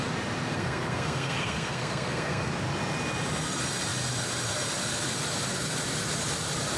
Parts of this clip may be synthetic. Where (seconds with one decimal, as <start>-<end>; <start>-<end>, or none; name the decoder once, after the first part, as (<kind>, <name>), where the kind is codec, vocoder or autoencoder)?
0.5-2.5 (codec, SNAC)